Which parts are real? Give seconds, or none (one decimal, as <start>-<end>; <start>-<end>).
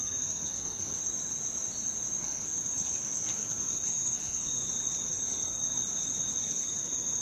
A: 1.0-2.2; 4.6-5.1; 5.8-6.4